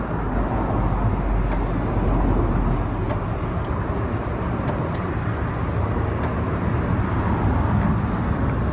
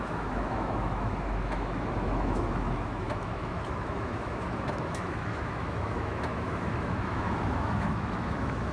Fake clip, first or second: second